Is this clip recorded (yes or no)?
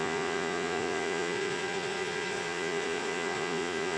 no